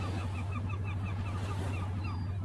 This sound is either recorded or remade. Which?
recorded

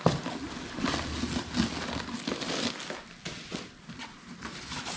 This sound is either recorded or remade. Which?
recorded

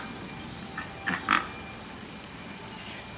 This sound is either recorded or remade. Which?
recorded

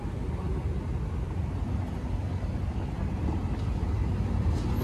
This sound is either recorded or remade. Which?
recorded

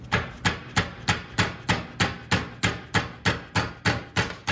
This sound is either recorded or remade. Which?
recorded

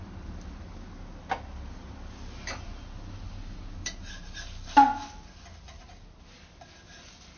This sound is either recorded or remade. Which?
recorded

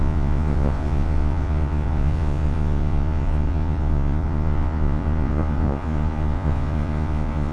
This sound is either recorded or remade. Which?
remade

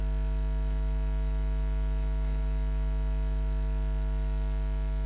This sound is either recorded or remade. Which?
remade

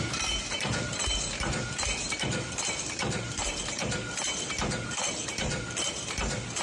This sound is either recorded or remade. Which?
remade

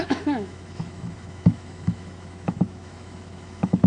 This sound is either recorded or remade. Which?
remade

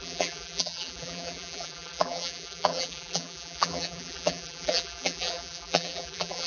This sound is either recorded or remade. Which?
remade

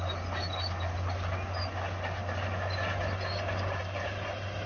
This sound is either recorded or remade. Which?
recorded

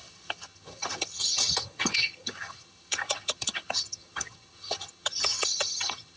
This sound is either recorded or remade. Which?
remade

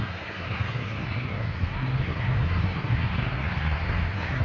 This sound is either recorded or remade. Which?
remade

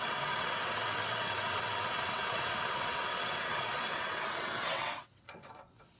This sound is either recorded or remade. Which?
remade